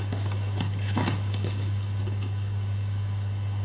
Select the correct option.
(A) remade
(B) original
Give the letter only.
A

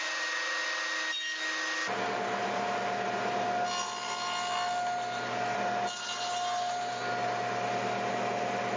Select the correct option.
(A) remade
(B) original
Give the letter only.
B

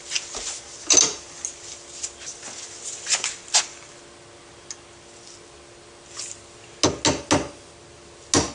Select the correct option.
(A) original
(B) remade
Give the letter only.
A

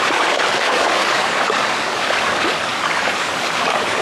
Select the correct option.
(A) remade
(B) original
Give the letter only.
A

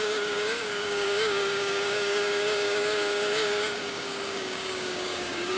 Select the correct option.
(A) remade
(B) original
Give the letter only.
A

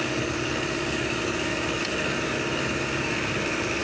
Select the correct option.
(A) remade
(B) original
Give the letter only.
A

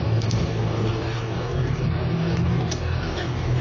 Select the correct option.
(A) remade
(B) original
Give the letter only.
A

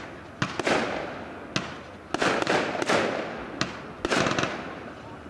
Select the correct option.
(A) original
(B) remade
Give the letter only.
A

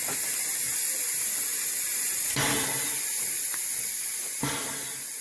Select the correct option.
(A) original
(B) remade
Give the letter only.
A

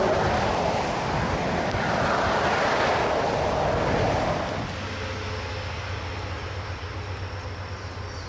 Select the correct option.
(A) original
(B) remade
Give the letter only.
A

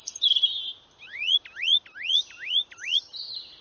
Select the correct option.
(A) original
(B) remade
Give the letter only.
A